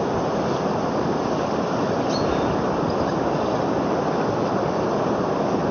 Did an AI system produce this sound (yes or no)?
no